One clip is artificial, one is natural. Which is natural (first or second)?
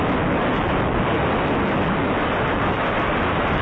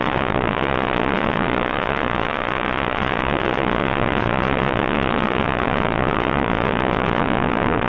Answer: first